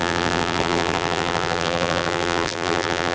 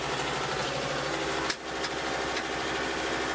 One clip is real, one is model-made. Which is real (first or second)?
second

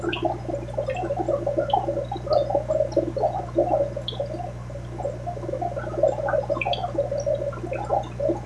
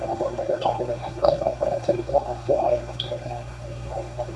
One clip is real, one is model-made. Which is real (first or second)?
first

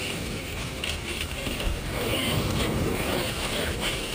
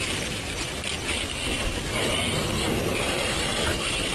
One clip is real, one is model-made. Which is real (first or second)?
second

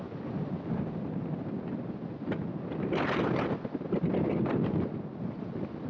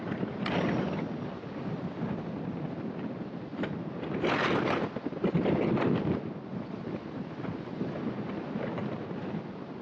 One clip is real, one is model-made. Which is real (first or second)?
first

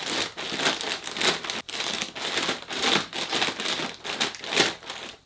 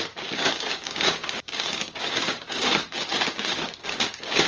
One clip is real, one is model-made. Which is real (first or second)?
first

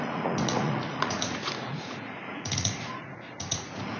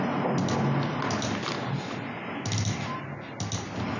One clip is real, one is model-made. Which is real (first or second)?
second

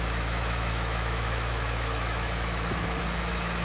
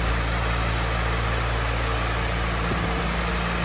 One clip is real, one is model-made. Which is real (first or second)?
second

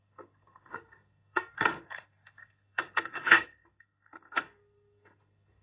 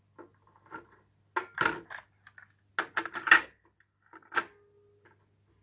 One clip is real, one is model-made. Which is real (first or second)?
second